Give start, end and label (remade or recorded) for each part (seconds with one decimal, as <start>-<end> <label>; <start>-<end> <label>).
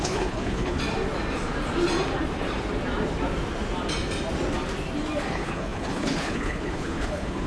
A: 0.0-0.8 remade; 0.8-5.3 recorded; 5.3-7.5 remade